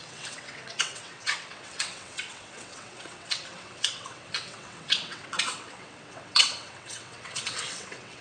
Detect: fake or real fake